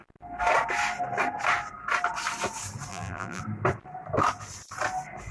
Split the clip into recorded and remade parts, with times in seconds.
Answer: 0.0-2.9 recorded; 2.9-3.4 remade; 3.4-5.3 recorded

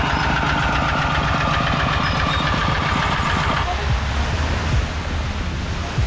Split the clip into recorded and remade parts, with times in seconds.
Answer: 0.0-6.1 recorded

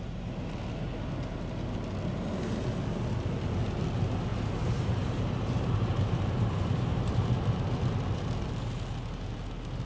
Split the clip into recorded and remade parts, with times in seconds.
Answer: 0.0-4.3 recorded; 4.3-7.7 remade; 7.7-9.9 recorded

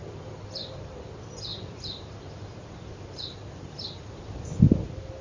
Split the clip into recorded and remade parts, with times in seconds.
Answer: 0.0-5.2 remade

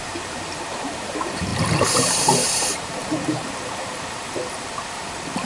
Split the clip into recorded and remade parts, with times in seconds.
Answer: 0.0-5.4 remade